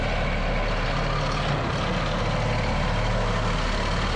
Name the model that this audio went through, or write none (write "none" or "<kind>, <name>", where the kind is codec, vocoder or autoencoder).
none